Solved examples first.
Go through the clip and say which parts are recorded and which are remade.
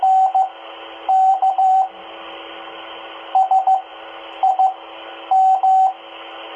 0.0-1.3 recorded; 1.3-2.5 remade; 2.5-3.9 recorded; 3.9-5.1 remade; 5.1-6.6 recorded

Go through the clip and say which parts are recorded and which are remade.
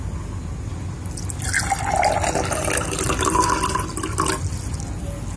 0.0-5.4 recorded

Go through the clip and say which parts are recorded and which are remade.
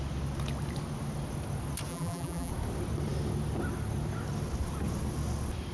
0.0-1.9 recorded; 1.9-2.5 remade; 2.5-5.7 recorded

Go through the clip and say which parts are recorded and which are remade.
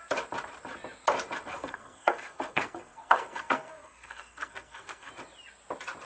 0.0-1.5 recorded; 1.5-5.1 remade; 5.1-6.0 recorded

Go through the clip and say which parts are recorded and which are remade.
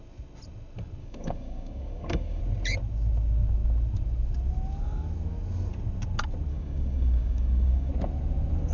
0.0-1.0 recorded; 1.0-2.4 remade; 2.4-6.5 recorded; 6.5-7.9 remade; 7.9-8.7 recorded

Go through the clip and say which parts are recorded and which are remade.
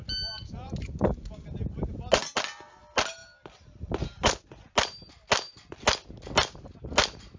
0.0-7.4 recorded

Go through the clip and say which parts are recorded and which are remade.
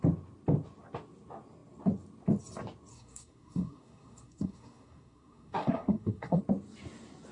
0.0-2.9 recorded; 2.9-6.4 remade; 6.4-7.3 recorded